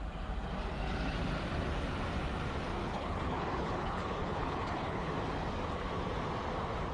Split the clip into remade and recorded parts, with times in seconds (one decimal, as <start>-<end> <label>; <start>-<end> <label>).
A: 0.0-2.8 recorded; 2.8-5.1 remade; 5.1-6.9 recorded